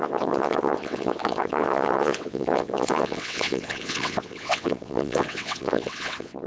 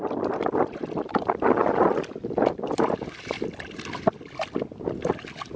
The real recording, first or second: second